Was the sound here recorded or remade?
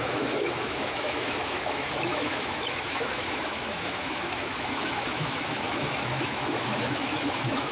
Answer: remade